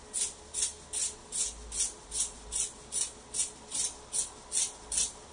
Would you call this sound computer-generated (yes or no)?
no